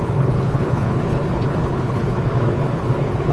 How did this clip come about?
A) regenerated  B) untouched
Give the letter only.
A